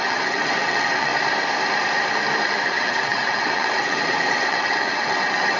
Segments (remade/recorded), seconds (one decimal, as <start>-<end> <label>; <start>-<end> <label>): 0.0-1.1 remade; 1.1-2.5 recorded; 2.5-5.6 remade